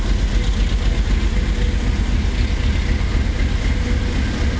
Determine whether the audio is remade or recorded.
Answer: recorded